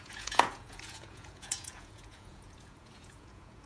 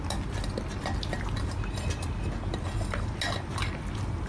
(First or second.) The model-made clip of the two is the first